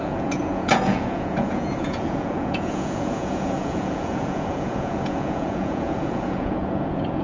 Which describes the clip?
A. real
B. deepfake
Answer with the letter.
B